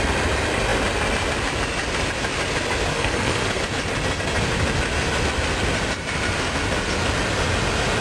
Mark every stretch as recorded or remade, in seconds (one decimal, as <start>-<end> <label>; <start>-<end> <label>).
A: 0.0-2.9 recorded; 2.9-3.6 remade; 3.6-8.0 recorded